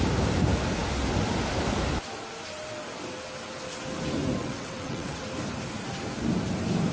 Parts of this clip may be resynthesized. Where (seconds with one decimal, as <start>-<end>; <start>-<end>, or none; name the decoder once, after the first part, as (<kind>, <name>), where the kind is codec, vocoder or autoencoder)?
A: 4.4-5.2 (vocoder, WaveNeXt)